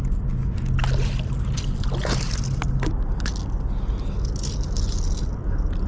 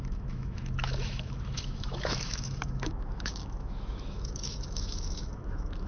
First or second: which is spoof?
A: second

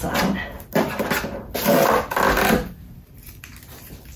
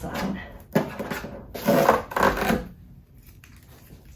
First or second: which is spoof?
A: first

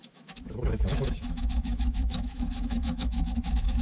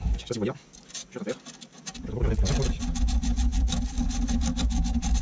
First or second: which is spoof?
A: first